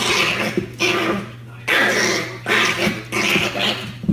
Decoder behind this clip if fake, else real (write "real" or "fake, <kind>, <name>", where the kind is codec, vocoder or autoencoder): real